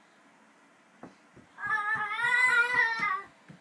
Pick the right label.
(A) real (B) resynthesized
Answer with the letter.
A